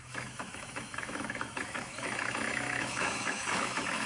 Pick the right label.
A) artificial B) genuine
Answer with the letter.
A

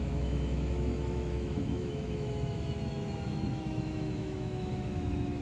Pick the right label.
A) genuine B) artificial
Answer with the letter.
B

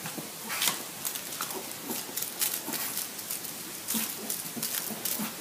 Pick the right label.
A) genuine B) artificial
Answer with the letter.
A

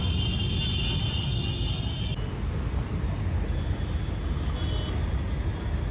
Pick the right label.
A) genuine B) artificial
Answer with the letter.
A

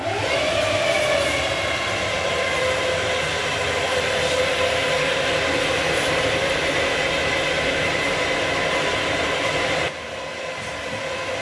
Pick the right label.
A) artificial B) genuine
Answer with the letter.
B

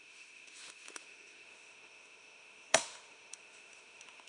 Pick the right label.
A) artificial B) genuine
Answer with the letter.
A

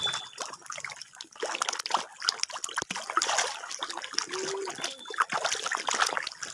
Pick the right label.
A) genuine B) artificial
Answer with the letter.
A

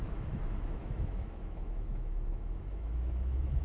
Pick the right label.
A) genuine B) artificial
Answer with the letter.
B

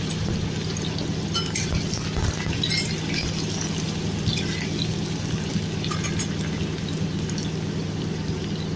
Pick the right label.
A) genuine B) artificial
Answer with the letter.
A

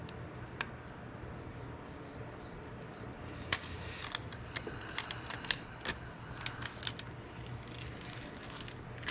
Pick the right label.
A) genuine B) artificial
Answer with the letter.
A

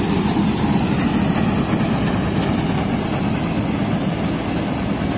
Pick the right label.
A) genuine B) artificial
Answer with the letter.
A